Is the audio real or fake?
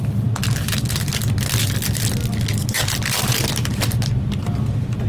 real